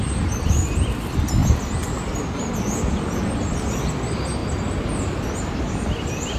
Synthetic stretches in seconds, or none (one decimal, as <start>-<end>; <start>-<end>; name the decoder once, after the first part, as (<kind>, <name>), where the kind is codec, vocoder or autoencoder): 0.0-1.4 (vocoder, BigVGAN v2); 3.9-4.4; 5.6-6.4